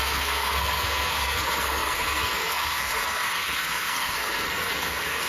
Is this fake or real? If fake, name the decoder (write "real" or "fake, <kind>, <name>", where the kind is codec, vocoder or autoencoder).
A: fake, codec, SNAC